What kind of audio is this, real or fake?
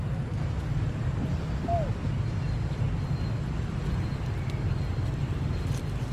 real